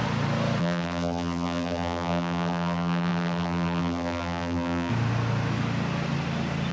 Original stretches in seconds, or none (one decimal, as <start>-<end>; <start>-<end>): 0.0-0.6; 4.9-6.7